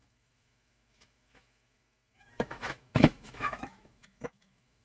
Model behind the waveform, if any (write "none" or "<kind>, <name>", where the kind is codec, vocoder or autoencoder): autoencoder, DAC-VAE